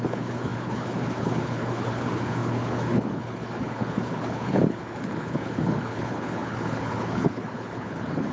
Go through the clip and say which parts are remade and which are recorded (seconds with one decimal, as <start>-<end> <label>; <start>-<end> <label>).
0.0-8.3 remade